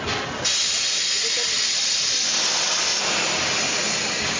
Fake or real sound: real